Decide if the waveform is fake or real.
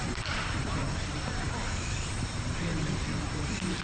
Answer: fake